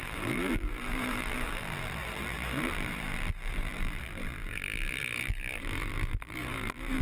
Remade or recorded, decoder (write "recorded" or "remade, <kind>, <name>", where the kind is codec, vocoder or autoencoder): remade, vocoder, BigVGAN v2